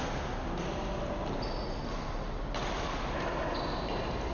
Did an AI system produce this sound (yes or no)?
no